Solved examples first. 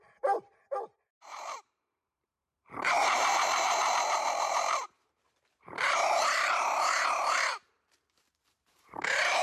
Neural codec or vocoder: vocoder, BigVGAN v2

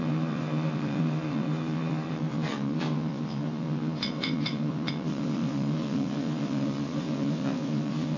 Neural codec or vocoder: vocoder, WaveNeXt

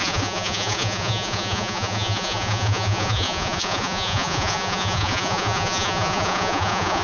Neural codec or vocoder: vocoder, Vocos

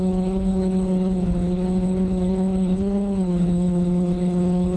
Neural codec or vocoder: codec, HILCodec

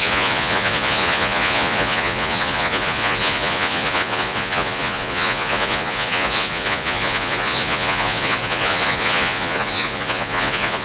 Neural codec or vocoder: vocoder, Vocos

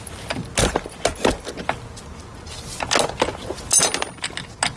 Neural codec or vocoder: none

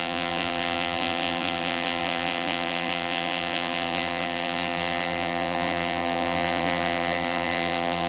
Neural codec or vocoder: vocoder, BigVGAN v2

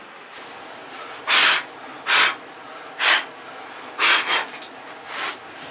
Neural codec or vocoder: none